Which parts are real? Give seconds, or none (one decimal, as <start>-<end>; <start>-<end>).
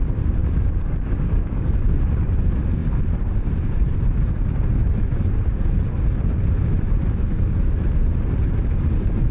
0.0-0.4; 2.0-9.3